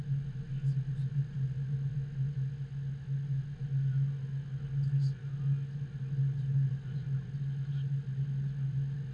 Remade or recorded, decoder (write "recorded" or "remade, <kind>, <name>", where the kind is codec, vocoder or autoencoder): recorded